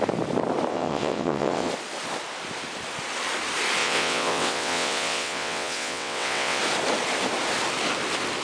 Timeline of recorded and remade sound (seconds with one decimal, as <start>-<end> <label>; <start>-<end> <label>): 0.0-0.7 recorded; 0.7-1.7 remade; 1.7-3.8 recorded; 3.8-6.6 remade; 6.6-8.4 recorded